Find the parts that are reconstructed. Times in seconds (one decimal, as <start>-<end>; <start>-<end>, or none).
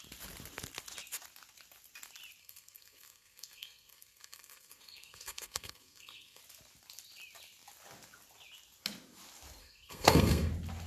2.4-6.4; 9.6-10.5